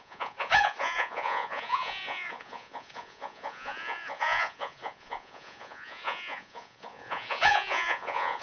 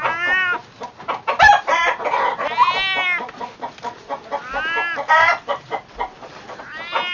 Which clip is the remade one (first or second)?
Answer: first